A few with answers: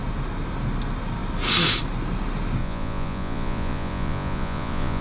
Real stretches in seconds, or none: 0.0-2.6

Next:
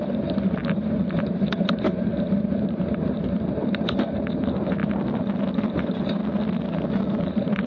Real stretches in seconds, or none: 4.8-5.7; 6.2-7.0

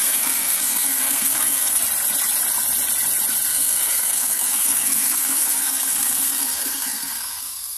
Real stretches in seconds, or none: 1.8-3.5

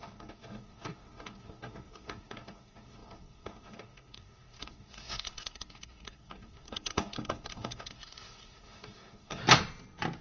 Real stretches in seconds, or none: 9.4-10.2